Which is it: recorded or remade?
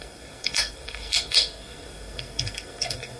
remade